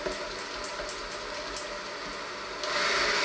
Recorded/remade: recorded